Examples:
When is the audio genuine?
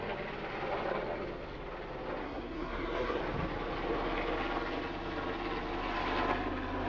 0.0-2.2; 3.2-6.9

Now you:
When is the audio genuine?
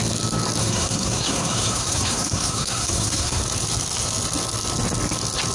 0.0-0.6; 3.4-5.5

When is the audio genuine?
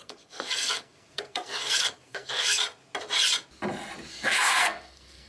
2.6-4.1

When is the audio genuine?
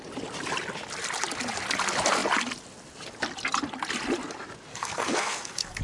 0.0-4.7